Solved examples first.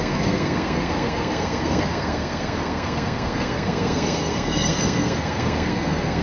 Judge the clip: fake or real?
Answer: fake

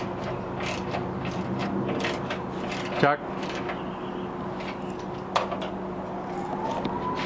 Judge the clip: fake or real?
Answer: real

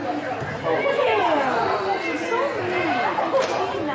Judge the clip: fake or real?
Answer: real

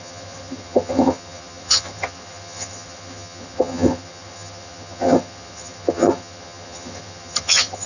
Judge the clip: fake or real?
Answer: fake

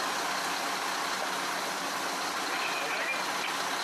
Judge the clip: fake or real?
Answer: real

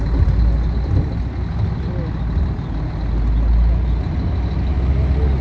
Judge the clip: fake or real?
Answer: real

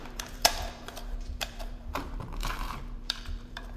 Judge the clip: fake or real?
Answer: fake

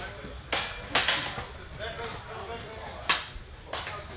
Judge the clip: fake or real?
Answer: real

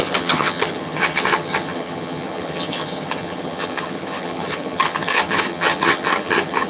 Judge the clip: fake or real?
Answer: fake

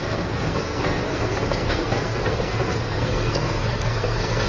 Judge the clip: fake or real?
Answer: fake